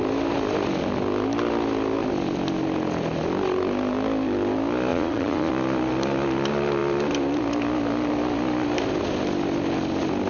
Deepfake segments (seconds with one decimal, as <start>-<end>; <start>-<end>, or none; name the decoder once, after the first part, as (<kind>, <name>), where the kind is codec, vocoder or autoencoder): 4.9-5.5 (vocoder, Vocos)